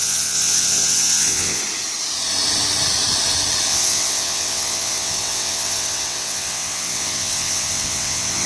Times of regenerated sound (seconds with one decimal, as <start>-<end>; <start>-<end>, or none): 0.0-1.6; 3.7-8.5